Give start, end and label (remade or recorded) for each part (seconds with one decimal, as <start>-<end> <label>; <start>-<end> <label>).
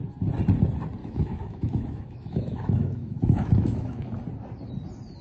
0.0-1.0 recorded; 1.0-4.1 remade; 4.1-5.2 recorded